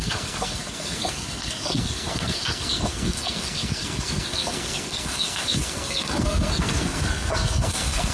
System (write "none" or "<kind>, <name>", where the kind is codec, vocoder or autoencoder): codec, SNAC